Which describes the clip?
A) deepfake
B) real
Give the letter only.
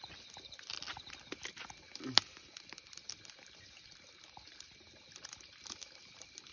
B